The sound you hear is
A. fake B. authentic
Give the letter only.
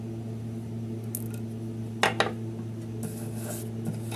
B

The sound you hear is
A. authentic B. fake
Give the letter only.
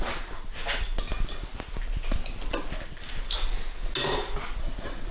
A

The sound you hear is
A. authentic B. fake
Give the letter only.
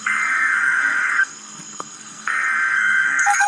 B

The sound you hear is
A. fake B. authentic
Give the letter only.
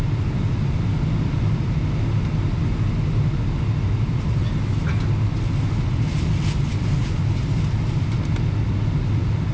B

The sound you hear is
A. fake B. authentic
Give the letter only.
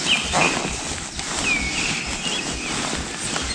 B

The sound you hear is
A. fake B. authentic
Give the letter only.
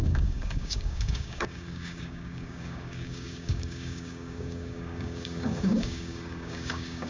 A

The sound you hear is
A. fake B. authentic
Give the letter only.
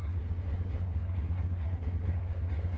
A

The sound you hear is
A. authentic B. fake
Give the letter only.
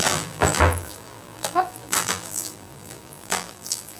B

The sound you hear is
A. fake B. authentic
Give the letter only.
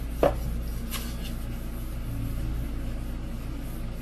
B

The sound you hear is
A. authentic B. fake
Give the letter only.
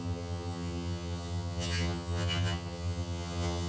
B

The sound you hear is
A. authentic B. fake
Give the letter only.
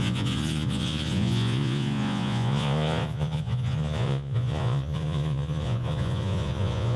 B